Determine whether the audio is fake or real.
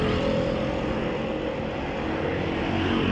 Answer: real